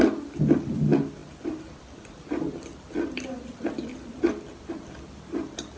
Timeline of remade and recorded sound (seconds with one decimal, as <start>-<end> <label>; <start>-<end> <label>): 0.0-5.8 recorded